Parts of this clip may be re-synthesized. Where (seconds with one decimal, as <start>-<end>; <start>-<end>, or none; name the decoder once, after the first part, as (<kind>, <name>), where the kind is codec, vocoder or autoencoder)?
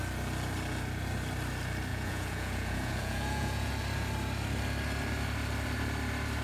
1.9-3.7 (vocoder, Vocos)